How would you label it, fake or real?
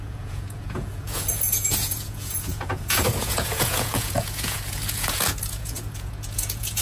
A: fake